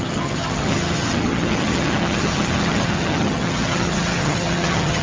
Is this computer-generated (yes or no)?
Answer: yes